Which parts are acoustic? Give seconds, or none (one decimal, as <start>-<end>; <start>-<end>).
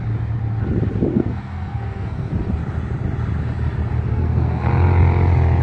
0.0-1.1; 2.3-4.1; 4.7-5.6